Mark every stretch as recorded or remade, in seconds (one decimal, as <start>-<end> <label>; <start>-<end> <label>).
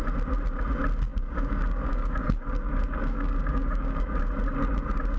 0.0-1.1 recorded; 1.1-4.2 remade; 4.2-5.2 recorded